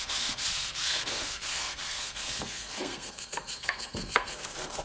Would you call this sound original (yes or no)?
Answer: no